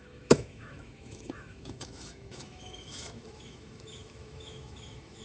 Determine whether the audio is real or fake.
fake